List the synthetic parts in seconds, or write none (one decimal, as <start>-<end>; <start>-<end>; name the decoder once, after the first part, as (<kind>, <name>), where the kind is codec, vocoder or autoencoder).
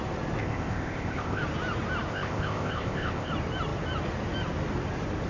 0.4-1.4 (codec, ZipCodec); 2.1-3.3